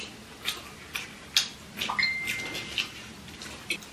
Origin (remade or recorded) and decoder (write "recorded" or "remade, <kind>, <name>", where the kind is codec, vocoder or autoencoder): recorded